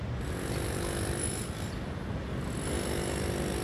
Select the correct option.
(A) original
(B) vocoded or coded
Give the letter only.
A